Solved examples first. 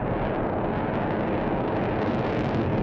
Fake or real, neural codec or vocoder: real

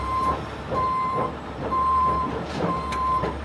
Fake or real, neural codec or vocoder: fake, vocoder, BigVGAN v2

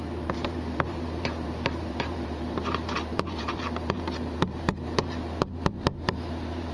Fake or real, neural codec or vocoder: fake, vocoder, BigVGAN v2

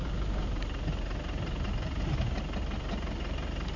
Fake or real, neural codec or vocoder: real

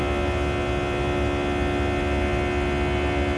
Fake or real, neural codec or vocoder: real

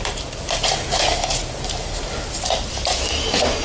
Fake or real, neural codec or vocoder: real